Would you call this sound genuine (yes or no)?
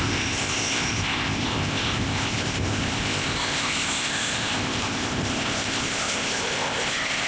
no